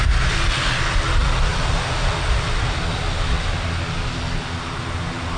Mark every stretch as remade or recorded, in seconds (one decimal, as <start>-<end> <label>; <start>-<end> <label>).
0.0-5.4 recorded